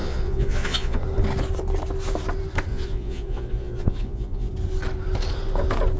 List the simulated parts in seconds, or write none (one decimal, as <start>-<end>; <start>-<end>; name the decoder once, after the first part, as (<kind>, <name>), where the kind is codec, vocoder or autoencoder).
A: 0.0-1.0 (vocoder, Vocos); 2.7-4.5

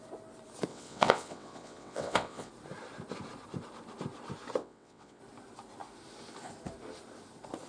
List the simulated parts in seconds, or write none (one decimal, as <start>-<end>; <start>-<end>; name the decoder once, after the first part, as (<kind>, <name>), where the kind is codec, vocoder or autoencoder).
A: 0.7-2.5 (vocoder, WaveNeXt); 4.6-5.2